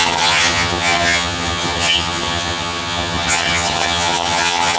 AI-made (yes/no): yes